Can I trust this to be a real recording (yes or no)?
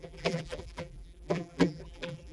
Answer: no